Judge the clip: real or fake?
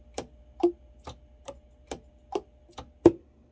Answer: real